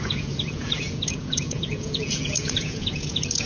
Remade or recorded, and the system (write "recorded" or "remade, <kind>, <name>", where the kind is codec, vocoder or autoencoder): remade, vocoder, Vocos